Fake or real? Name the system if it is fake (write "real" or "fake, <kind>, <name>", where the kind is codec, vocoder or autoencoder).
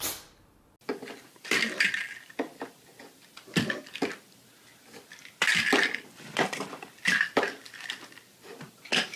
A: real